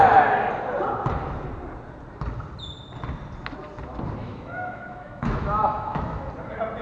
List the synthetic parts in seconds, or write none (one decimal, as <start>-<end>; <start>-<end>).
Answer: 4.2-6.3